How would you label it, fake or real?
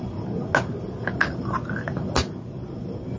real